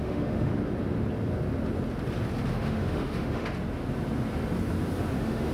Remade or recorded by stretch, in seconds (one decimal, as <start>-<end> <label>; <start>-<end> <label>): 0.0-0.5 remade; 0.5-2.5 recorded; 2.5-3.4 remade; 3.4-5.1 recorded; 5.1-5.5 remade